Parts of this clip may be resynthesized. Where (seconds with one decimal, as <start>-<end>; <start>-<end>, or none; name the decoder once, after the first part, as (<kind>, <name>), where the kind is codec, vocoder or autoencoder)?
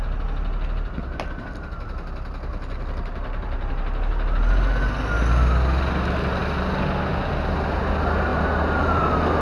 2.5-3.7 (vocoder, BigVGAN v2); 8.3-9.0